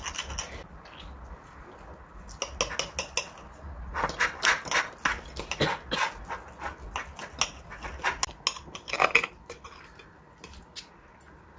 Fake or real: real